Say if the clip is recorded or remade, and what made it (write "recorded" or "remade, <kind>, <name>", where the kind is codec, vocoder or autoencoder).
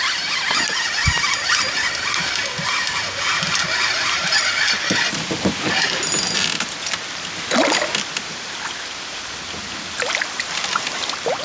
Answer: recorded